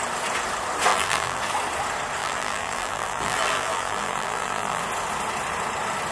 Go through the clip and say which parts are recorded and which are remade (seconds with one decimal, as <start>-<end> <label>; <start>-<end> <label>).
0.0-0.9 recorded; 0.9-1.4 remade; 1.4-2.2 recorded; 2.2-4.8 remade; 4.8-6.1 recorded